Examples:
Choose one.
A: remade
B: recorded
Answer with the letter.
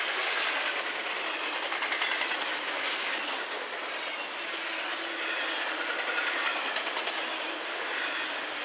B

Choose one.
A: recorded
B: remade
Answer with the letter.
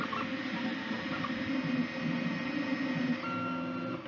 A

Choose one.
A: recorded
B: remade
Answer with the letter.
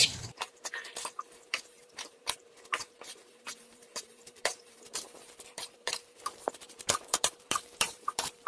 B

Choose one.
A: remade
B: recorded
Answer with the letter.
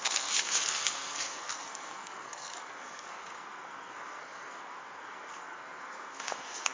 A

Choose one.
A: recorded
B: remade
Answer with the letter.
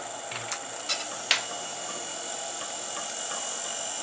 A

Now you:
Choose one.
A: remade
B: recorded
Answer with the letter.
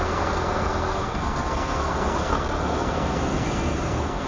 A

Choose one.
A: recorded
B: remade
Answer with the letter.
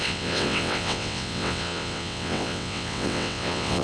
B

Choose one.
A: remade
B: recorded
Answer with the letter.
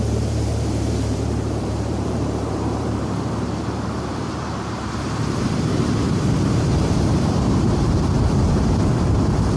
A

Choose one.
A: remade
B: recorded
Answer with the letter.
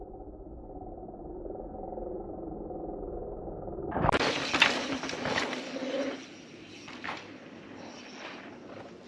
B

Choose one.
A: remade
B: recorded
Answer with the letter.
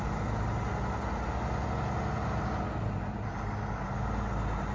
B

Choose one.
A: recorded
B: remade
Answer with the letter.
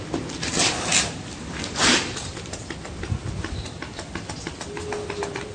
A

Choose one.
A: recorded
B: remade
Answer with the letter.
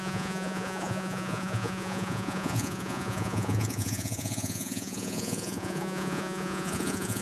B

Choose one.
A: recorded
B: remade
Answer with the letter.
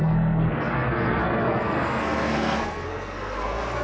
B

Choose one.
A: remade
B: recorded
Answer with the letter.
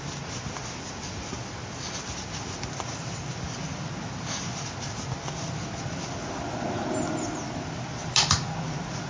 B